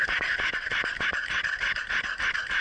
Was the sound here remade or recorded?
recorded